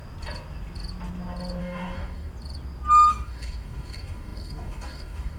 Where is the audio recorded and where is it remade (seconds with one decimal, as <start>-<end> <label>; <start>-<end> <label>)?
0.0-1.6 recorded; 1.6-2.3 remade; 2.3-3.1 recorded; 3.1-5.4 remade